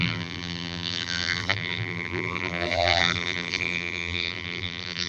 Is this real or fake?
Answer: fake